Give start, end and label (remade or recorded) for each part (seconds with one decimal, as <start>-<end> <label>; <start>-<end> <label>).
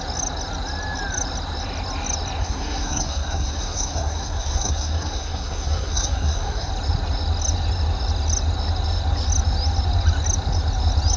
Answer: 0.0-2.4 recorded; 2.4-6.7 remade; 6.7-11.2 recorded